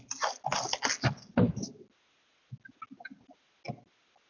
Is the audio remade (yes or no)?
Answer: no